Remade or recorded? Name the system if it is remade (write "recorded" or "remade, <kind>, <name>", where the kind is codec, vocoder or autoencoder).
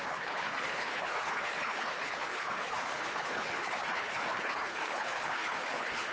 remade, codec, HILCodec